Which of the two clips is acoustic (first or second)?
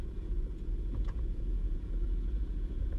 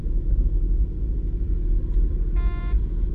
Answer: second